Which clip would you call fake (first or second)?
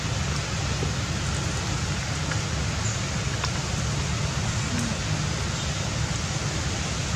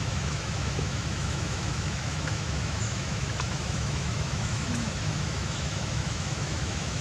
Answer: second